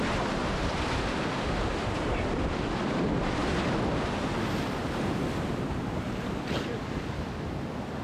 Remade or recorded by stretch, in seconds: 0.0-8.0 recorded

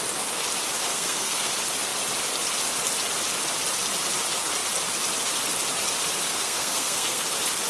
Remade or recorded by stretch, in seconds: 0.0-0.9 recorded; 0.9-1.5 remade; 1.5-6.3 recorded; 6.3-7.2 remade; 7.2-7.7 recorded

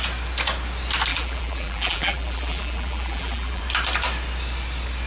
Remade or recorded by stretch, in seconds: 0.0-1.1 recorded; 1.1-3.6 remade; 3.6-5.1 recorded

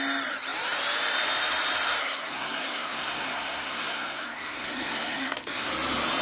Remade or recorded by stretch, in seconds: 0.0-2.0 recorded; 2.0-5.7 remade; 5.7-6.2 recorded

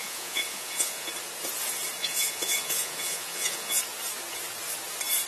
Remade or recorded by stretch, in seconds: 0.0-1.1 remade; 1.1-2.0 recorded; 2.0-3.8 remade; 3.8-5.3 recorded

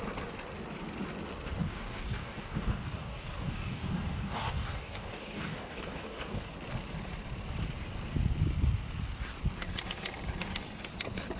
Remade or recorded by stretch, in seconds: 0.0-1.6 recorded; 1.6-6.5 remade; 6.5-11.4 recorded